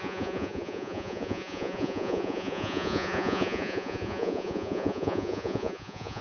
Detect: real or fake fake